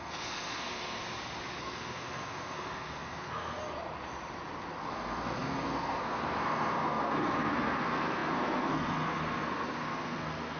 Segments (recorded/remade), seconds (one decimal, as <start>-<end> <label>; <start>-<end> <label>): 0.0-1.0 remade; 1.0-1.6 recorded; 1.6-3.6 remade; 3.6-4.9 recorded; 4.9-10.6 remade